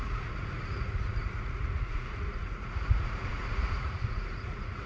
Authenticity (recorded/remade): remade